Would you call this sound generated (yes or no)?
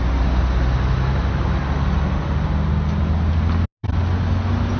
no